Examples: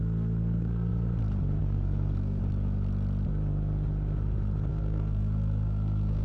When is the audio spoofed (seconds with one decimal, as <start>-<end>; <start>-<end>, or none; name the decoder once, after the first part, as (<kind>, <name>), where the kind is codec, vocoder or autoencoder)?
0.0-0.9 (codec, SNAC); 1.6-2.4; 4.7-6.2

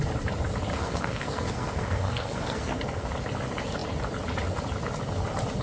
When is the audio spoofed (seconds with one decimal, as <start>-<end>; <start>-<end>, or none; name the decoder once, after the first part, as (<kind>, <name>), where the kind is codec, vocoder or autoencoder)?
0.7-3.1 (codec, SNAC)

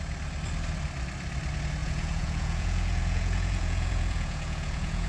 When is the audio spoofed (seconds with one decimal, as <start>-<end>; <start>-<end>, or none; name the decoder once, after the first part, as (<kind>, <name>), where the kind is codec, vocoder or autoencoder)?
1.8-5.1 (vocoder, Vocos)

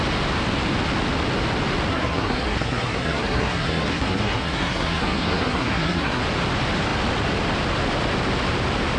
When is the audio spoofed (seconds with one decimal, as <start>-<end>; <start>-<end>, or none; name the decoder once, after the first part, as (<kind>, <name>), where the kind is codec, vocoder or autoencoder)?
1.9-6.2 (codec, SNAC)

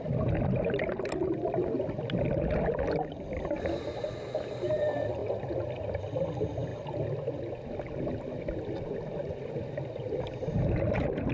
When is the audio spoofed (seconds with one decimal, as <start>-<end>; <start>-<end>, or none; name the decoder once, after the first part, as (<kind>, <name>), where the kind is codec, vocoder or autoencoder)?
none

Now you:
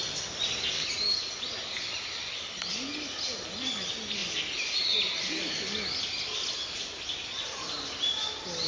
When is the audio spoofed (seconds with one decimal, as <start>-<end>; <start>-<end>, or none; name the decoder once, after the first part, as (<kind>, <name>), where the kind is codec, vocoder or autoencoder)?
none